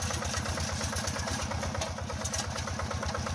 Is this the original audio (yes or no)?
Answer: yes